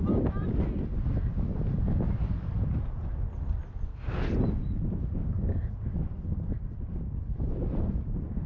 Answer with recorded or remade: remade